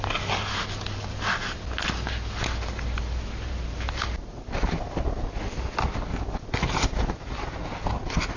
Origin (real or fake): real